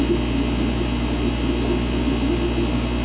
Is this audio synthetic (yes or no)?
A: no